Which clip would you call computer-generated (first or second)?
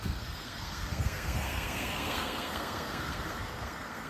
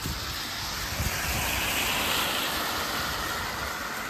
first